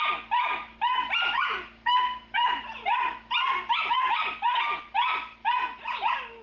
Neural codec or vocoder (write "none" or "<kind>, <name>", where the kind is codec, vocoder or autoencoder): none